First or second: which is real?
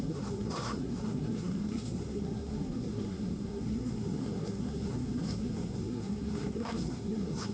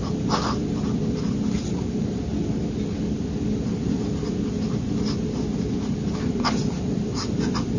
second